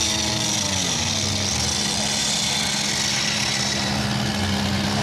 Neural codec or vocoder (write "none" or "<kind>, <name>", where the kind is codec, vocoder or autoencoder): none